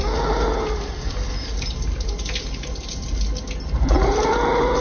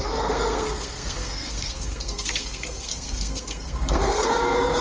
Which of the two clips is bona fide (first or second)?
first